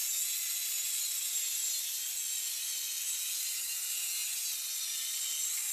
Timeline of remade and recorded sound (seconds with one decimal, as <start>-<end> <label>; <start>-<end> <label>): 0.0-5.7 recorded